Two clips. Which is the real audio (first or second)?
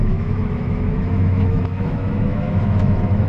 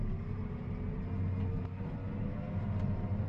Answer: second